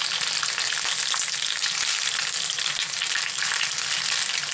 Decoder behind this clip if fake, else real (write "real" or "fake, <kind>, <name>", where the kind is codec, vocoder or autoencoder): real